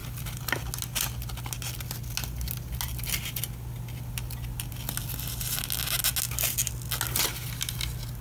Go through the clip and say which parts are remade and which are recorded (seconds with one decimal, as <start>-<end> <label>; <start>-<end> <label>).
0.0-8.2 recorded